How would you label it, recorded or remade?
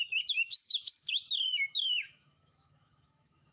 remade